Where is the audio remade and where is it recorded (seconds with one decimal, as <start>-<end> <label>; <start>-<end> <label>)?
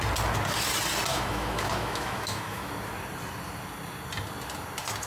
0.0-1.1 recorded; 1.1-2.7 remade; 2.7-5.1 recorded